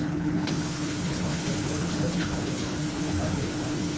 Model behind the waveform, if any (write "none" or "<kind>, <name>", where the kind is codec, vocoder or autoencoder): codec, HILCodec